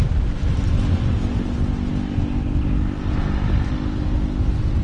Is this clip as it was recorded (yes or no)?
yes